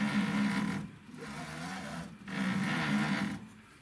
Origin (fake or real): real